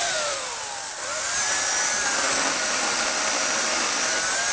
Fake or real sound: fake